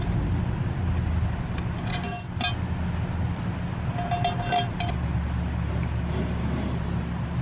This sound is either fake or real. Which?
real